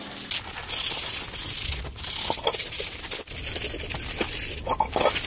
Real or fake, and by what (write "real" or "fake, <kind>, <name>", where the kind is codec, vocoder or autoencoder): real